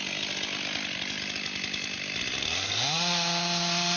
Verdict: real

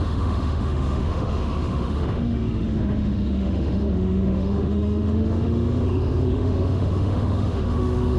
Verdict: fake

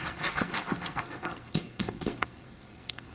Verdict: fake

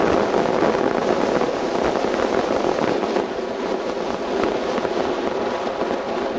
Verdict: real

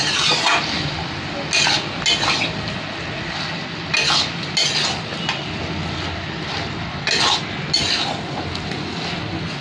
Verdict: real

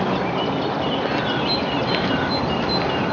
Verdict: real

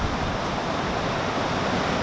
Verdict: real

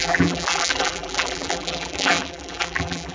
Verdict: fake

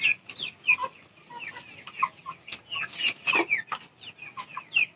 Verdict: real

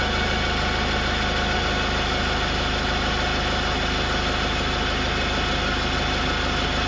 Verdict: real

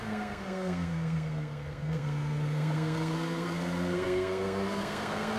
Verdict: fake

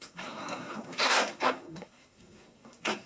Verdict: fake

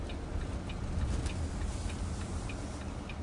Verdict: real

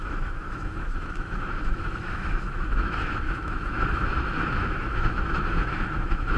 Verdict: fake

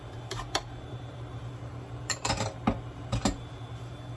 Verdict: fake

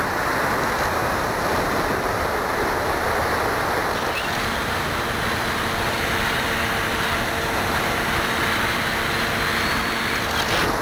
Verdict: real